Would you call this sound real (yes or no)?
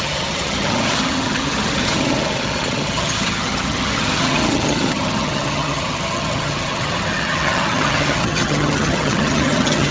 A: no